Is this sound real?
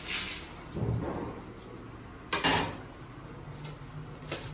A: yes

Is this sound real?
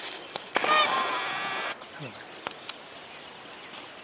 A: yes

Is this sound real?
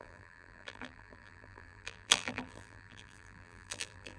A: no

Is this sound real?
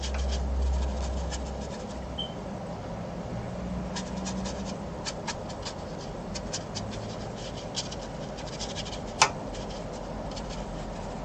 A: yes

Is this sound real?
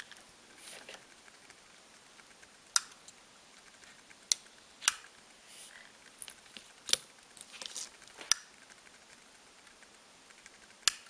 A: yes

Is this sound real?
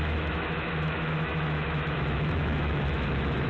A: no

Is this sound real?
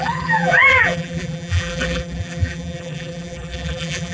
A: no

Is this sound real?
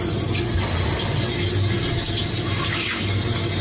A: yes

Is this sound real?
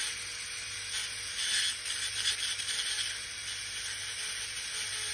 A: yes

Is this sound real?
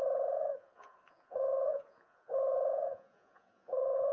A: no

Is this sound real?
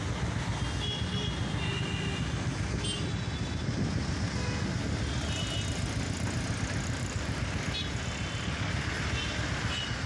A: yes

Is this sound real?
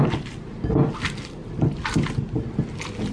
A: yes